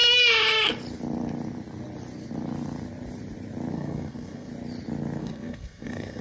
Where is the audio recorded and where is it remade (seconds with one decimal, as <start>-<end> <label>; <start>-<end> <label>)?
0.0-3.7 recorded; 3.7-4.5 remade; 4.5-5.2 recorded; 5.2-6.2 remade